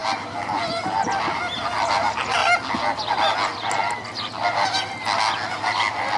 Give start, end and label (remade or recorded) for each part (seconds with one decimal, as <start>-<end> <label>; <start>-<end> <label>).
0.0-1.4 remade; 1.4-6.2 recorded